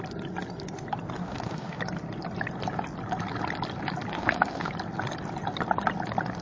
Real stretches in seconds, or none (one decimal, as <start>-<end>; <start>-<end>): 0.0-1.2; 1.8-4.1; 4.7-6.4